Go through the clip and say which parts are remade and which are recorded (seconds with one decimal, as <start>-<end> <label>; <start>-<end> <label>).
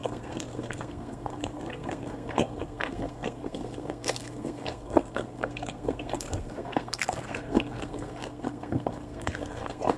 0.0-10.0 remade